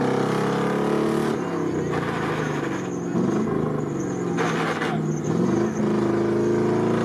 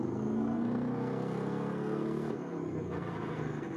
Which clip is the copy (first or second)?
second